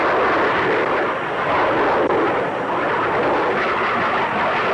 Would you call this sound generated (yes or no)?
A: no